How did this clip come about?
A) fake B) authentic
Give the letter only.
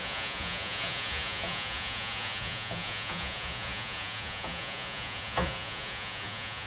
A